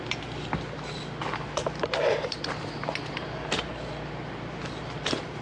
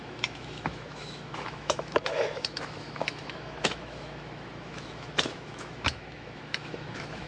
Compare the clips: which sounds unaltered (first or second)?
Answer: first